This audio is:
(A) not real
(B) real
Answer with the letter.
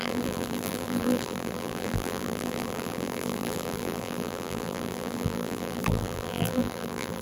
A